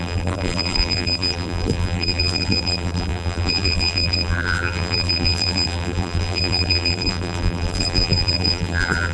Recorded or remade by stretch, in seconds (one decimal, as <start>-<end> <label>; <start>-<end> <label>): 0.0-9.1 remade